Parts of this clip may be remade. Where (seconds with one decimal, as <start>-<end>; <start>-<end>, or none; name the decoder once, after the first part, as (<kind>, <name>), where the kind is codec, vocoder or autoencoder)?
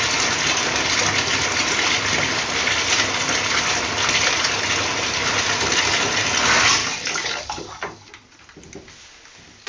6.8-8.1 (codec, DAC)